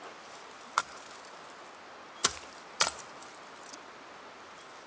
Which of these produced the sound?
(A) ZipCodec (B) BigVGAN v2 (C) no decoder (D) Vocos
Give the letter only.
C